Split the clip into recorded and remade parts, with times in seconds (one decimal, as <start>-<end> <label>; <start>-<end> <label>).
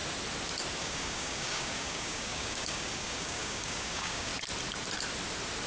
0.0-0.8 recorded; 0.8-4.3 remade; 4.3-5.7 recorded